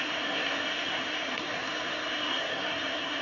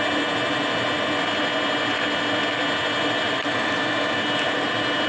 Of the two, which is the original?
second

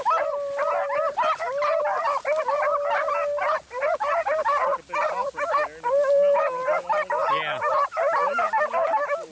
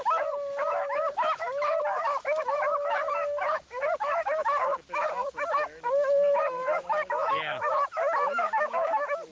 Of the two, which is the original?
first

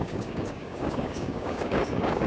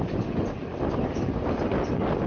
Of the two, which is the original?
second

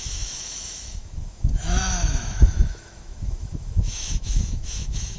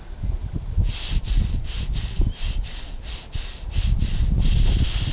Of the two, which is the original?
second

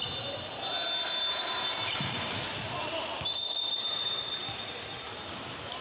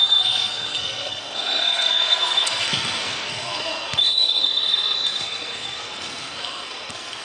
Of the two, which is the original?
first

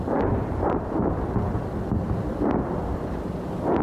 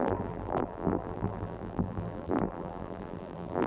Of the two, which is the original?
first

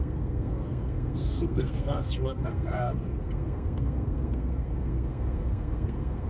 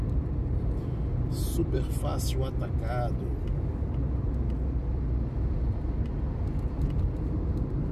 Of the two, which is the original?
second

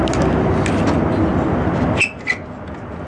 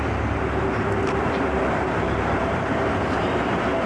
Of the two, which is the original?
first